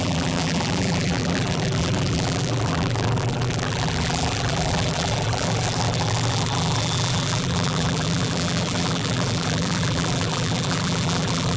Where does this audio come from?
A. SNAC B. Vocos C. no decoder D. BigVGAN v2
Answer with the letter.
D